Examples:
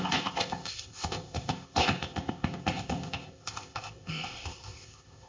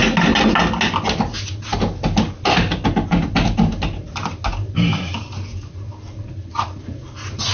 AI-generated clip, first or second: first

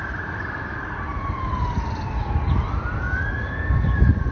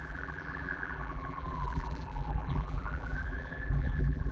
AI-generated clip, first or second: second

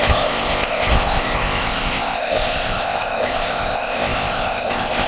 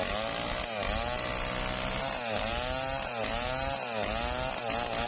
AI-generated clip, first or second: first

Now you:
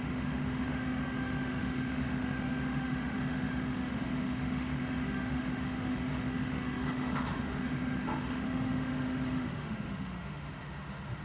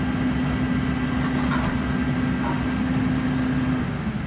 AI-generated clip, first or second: first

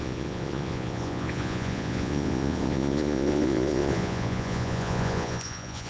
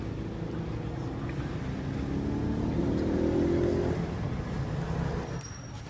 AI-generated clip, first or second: first